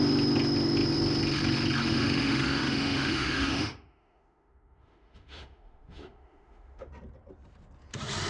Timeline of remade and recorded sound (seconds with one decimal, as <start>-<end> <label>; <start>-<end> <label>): 0.0-1.9 recorded; 1.9-6.9 remade; 6.9-8.3 recorded